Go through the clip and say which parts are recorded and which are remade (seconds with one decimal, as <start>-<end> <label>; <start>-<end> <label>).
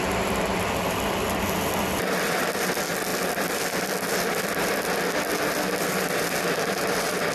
0.0-7.3 recorded